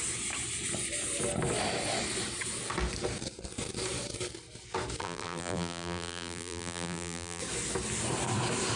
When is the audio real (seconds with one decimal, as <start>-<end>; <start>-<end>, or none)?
0.0-5.0; 7.4-8.8